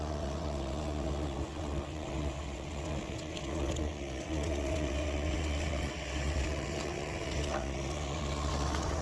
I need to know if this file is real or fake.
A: fake